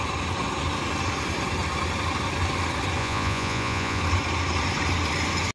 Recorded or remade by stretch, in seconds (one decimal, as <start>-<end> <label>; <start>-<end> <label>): 0.0-3.0 recorded; 3.0-4.0 remade; 4.0-5.5 recorded